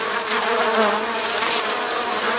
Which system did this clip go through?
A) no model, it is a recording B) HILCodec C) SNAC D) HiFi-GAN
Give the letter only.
A